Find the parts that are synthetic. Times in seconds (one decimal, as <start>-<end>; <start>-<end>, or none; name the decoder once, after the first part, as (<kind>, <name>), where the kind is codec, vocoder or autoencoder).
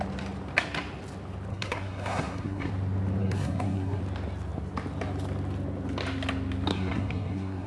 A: 1.5-2.7 (codec, SNAC); 3.2-4.0; 6.7-7.7